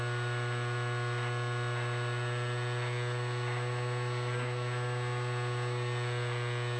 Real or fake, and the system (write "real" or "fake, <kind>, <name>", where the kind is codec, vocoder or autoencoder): real